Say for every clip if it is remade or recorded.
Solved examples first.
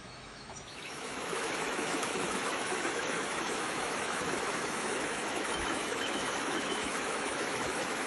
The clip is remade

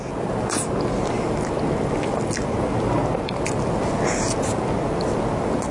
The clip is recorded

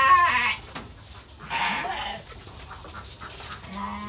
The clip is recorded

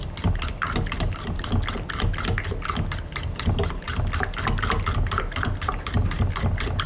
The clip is recorded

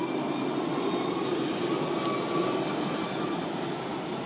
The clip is recorded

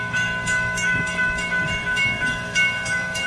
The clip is remade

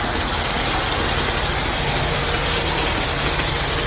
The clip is recorded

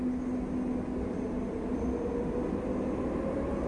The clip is recorded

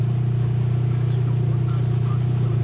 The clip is recorded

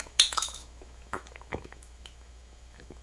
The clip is remade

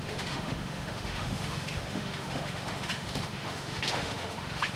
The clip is remade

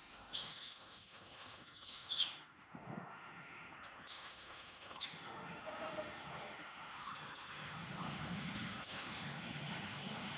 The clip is remade